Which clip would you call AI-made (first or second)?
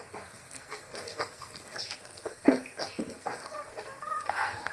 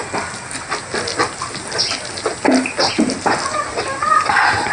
first